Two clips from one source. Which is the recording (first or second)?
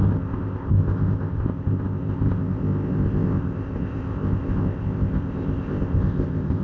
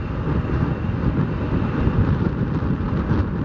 second